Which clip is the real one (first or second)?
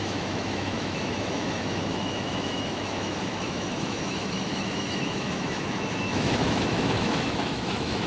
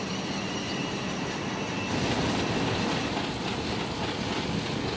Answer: second